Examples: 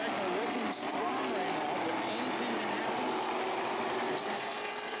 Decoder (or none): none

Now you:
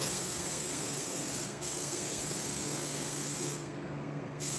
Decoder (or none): codec, SNAC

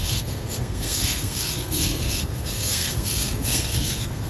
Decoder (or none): codec, SNAC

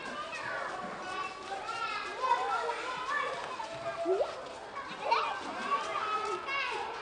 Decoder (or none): none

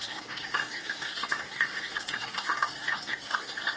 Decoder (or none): codec, SNAC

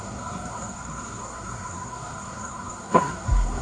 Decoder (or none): codec, SNAC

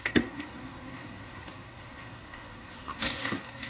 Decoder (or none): codec, SNAC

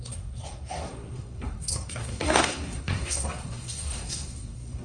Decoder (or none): codec, SNAC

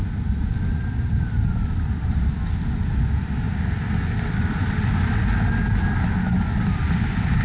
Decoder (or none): none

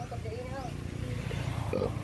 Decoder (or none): none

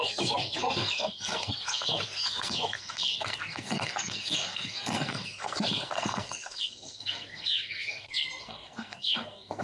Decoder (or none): codec, SNAC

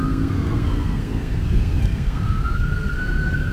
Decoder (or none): codec, SNAC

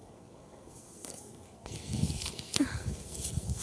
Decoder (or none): codec, SNAC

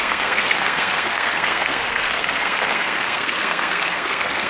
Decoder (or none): codec, SNAC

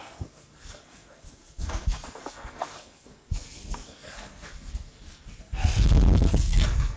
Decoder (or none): codec, SNAC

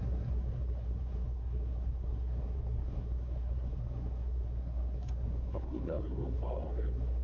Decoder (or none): codec, SNAC